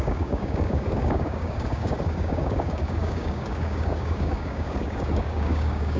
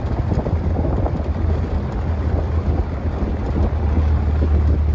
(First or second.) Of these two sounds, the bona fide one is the second